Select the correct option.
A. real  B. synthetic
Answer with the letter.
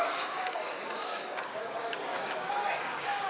B